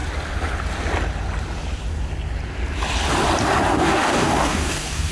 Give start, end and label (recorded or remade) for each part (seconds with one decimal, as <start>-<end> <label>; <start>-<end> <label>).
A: 0.0-3.7 recorded; 3.7-5.1 remade